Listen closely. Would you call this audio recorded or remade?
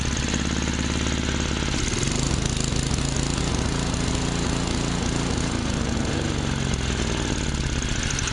recorded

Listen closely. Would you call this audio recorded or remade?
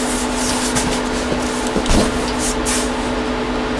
recorded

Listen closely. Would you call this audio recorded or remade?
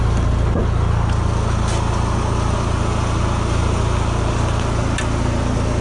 recorded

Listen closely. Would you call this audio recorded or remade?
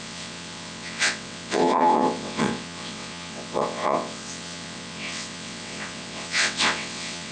remade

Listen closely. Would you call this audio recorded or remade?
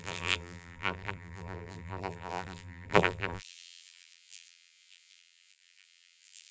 remade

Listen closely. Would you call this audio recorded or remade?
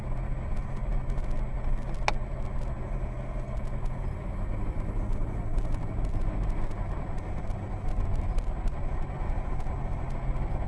recorded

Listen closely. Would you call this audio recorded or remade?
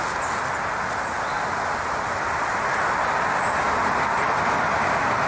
recorded